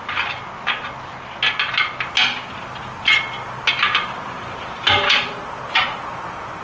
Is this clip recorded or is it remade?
recorded